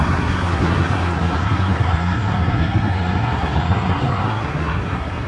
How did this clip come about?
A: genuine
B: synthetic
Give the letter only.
B